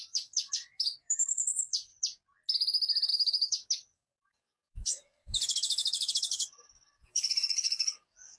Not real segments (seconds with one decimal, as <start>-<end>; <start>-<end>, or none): 0.0-1.9; 3.1-8.4